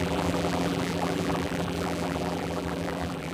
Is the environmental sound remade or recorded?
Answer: remade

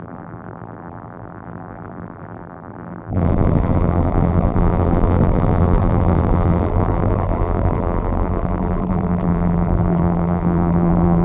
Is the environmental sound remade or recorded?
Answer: remade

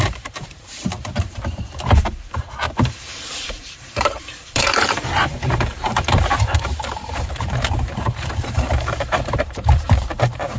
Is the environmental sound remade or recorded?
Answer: remade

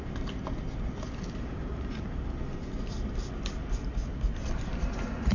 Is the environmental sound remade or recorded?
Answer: recorded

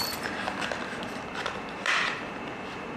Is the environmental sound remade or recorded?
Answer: remade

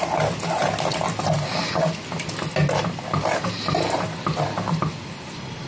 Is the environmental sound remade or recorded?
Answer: recorded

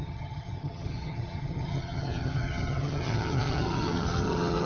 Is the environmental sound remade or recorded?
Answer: remade